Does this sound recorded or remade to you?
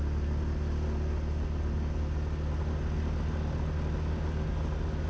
recorded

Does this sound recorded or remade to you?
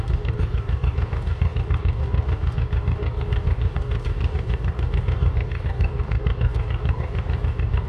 remade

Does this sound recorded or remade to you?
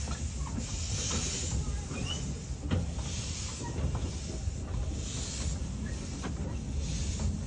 recorded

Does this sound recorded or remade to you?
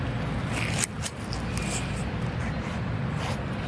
recorded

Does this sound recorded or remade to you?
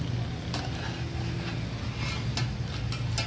recorded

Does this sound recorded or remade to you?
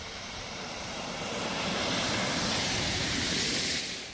remade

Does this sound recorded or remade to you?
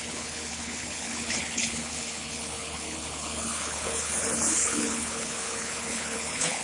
remade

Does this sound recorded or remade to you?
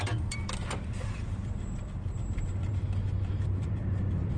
remade